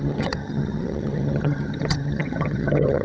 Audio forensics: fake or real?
fake